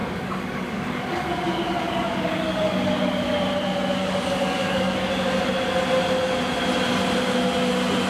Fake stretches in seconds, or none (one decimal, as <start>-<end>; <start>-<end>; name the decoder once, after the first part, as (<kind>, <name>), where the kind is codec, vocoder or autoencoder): 0.0-3.4 (codec, DAC); 4.0-5.1